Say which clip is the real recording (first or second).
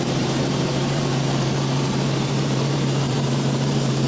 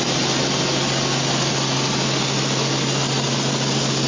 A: second